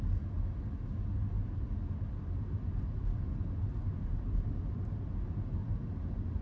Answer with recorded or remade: recorded